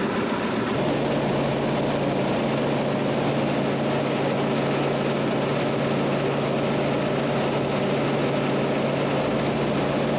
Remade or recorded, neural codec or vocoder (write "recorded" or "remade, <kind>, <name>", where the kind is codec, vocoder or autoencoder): recorded